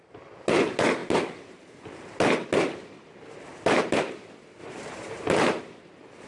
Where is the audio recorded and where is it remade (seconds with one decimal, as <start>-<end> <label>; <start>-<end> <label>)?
0.0-6.3 recorded